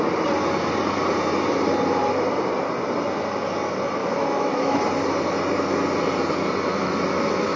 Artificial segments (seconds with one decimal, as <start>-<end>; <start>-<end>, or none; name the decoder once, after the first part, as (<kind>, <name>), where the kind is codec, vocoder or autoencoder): 4.0-4.9 (autoencoder, DAC-VAE); 6.7-7.6